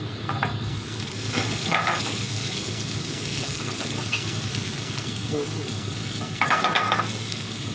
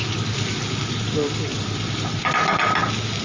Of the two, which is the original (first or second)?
second